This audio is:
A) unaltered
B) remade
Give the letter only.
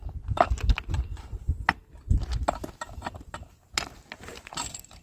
A